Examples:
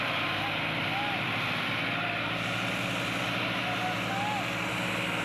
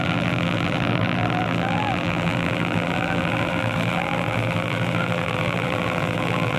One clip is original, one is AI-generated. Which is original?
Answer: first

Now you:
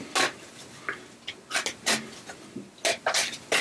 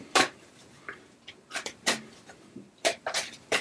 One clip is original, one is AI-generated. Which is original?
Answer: first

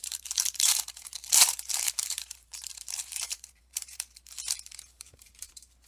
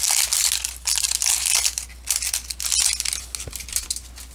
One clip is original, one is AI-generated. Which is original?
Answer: second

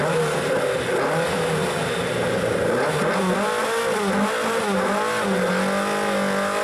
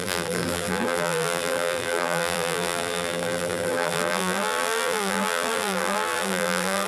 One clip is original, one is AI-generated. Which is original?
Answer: first